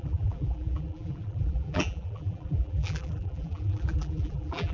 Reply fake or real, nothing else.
fake